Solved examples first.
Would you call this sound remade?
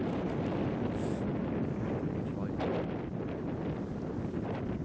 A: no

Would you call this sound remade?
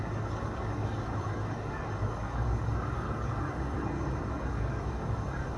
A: yes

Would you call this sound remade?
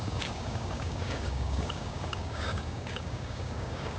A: yes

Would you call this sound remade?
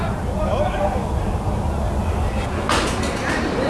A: no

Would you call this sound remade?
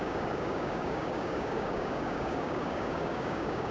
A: yes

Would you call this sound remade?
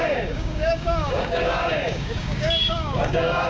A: yes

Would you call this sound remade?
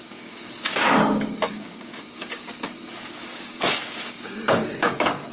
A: yes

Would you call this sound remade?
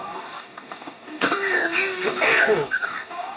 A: yes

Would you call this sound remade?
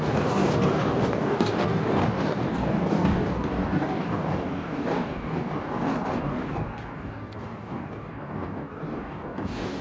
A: yes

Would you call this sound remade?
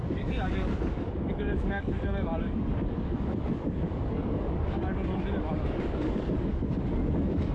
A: yes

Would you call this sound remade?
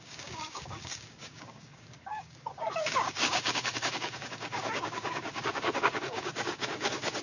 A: yes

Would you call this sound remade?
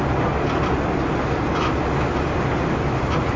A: no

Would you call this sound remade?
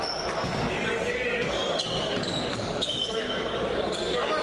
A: yes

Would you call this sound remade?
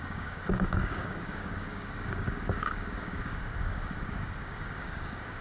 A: yes